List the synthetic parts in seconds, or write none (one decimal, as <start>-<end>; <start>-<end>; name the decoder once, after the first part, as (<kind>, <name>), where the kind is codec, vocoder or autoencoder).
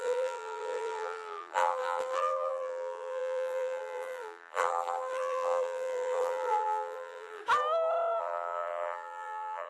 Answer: 0.0-7.4 (vocoder, BigVGAN v2); 8.2-9.7